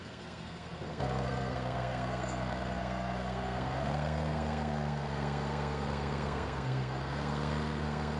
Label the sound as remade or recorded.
remade